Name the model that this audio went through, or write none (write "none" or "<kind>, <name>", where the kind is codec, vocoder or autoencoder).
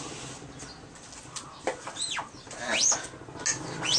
none